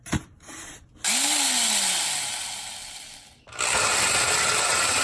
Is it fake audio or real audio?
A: real